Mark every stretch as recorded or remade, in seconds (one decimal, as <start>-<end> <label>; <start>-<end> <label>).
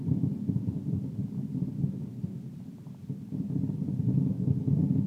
0.0-5.1 recorded